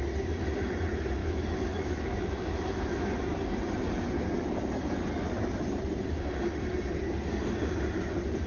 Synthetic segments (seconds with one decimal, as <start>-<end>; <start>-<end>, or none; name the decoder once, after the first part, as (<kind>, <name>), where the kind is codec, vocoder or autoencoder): 1.2-3.1 (autoencoder, DAC-VAE)